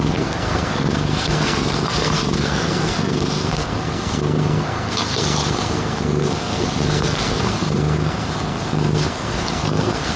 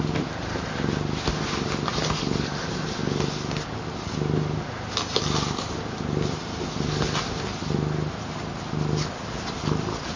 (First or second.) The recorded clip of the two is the second